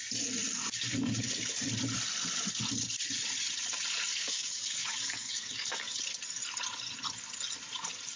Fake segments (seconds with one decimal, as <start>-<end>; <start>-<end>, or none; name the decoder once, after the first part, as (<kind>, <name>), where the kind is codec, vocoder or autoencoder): 4.2-6.0 (codec, DAC)